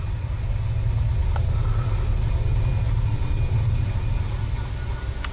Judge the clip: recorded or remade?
recorded